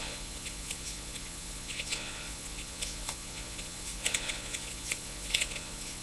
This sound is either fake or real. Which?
fake